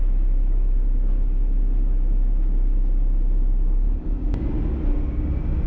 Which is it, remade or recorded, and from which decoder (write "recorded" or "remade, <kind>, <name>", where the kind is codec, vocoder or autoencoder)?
recorded